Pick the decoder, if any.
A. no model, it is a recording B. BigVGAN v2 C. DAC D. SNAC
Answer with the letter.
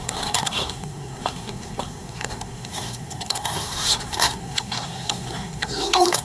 D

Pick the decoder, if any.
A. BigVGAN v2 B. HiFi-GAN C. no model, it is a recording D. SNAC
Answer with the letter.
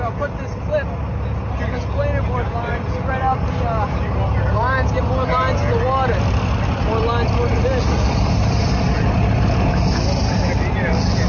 C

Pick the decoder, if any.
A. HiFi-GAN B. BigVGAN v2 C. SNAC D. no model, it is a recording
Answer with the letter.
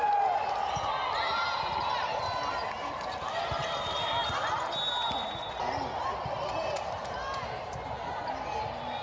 D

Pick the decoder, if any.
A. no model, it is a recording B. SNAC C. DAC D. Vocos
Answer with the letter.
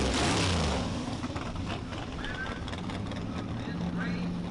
A